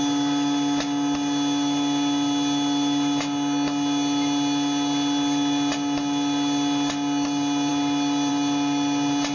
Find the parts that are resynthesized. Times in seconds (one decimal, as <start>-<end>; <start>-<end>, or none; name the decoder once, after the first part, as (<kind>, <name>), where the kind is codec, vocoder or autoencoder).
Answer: none